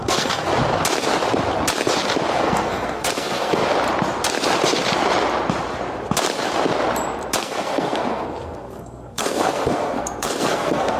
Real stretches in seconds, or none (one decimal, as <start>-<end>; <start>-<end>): 0.5-2.3; 3.6-7.4